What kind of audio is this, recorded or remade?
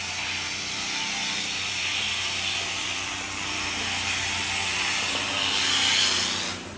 recorded